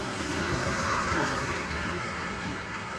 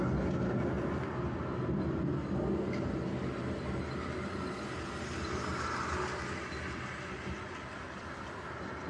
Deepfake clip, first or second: first